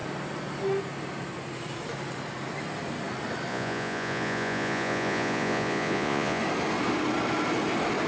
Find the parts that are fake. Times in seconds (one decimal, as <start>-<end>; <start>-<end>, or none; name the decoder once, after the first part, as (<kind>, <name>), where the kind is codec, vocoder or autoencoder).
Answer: 3.5-6.4 (vocoder, Vocos)